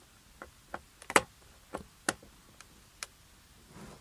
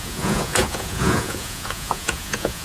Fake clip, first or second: second